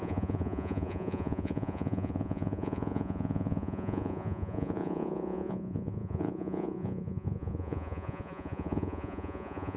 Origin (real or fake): fake